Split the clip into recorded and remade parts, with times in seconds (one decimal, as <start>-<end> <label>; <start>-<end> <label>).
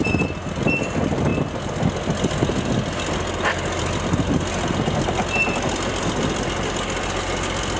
0.0-7.8 recorded